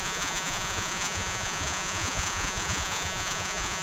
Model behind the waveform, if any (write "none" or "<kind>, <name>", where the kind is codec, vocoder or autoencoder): vocoder, Vocos